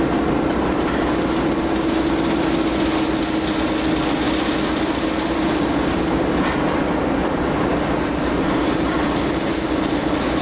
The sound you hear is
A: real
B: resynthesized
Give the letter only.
A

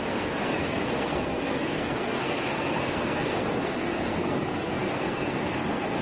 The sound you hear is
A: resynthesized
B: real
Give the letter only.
A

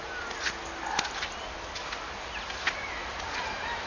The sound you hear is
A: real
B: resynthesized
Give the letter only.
A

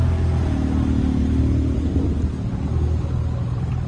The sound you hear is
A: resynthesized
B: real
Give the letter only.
B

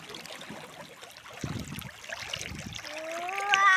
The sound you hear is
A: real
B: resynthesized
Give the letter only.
A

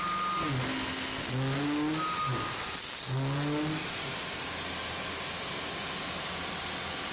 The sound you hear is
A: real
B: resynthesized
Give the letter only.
A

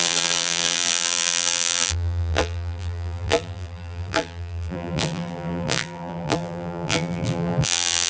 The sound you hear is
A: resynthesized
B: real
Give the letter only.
A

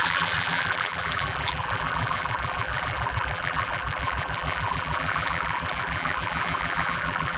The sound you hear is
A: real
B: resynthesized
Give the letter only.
B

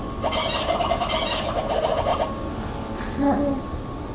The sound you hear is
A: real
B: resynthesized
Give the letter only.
A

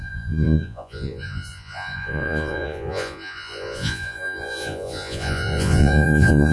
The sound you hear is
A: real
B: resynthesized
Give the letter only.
B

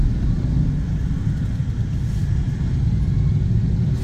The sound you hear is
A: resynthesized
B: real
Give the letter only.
B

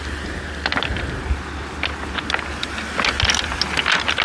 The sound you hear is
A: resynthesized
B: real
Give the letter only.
B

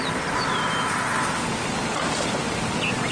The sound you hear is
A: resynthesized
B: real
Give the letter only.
B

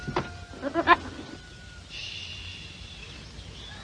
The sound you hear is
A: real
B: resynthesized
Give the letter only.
A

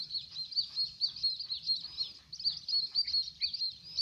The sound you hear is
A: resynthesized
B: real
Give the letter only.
B